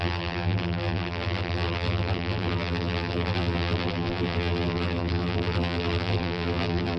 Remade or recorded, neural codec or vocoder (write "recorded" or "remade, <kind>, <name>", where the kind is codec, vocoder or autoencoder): remade, vocoder, BigVGAN v2